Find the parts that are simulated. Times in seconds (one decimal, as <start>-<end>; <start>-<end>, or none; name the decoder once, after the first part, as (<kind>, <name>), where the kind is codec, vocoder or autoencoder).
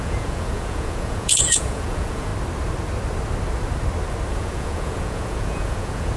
0.0-2.3 (vocoder, Vocos); 4.3-6.2